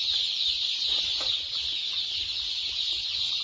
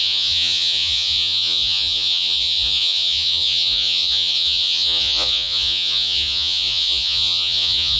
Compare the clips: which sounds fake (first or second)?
second